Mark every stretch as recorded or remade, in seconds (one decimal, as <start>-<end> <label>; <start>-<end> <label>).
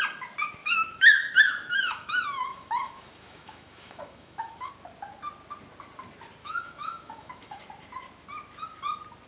0.0-0.6 recorded; 0.6-4.7 remade; 4.7-6.4 recorded; 6.4-7.6 remade; 7.6-9.3 recorded